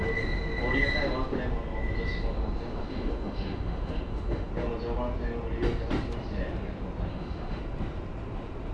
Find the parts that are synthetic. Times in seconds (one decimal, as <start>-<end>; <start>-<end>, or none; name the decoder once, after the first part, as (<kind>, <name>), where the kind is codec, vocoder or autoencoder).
2.7-4.5 (autoencoder, DAC-VAE); 7.1-7.6